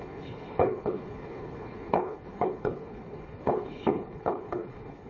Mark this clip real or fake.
fake